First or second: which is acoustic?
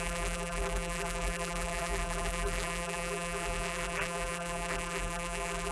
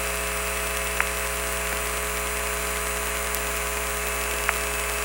second